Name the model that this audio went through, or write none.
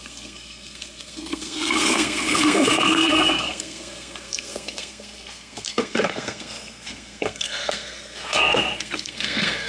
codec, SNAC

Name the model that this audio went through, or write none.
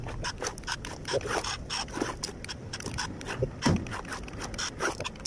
none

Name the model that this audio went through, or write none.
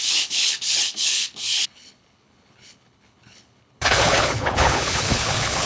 codec, HILCodec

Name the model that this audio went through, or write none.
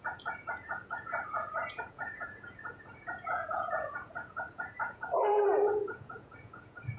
vocoder, Vocos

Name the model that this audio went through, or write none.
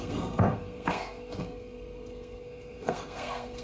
codec, SNAC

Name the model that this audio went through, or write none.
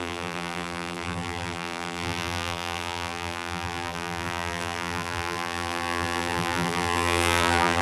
vocoder, BigVGAN v2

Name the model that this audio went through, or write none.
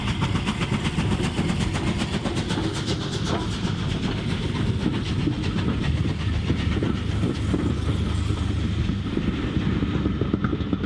none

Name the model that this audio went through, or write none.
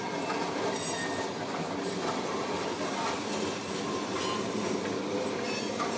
none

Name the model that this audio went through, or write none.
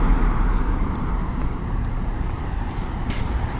vocoder, BigVGAN v2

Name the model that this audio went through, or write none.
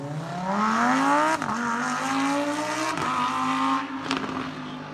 none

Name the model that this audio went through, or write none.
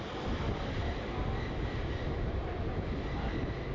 none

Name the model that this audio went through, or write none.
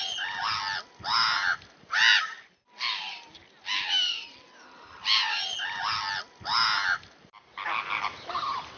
none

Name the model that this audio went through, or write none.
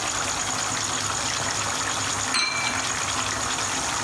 none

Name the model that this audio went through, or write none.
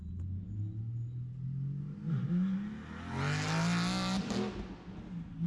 none